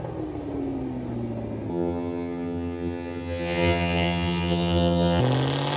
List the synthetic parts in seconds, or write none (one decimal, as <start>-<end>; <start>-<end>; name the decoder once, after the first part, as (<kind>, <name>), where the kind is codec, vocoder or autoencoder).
1.7-5.2 (vocoder, HiFi-GAN)